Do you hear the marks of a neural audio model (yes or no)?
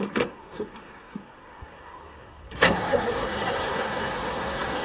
yes